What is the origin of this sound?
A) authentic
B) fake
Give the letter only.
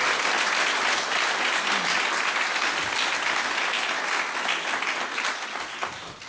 A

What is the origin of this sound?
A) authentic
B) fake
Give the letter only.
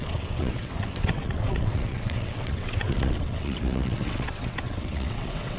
B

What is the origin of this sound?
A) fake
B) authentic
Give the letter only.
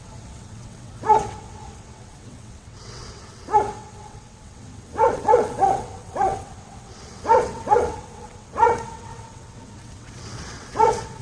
A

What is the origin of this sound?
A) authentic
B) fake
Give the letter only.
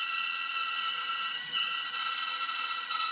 B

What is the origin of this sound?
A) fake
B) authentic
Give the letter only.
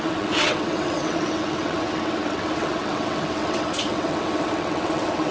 A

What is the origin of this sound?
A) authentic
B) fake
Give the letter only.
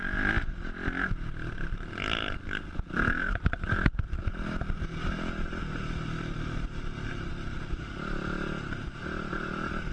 A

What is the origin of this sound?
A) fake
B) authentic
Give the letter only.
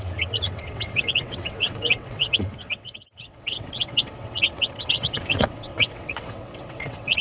A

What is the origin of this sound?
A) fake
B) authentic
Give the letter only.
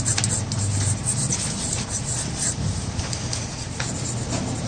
B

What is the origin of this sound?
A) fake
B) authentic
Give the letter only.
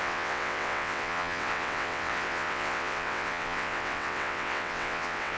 A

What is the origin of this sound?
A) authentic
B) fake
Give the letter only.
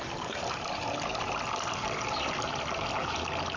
A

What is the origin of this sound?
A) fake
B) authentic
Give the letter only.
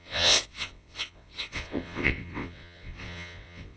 A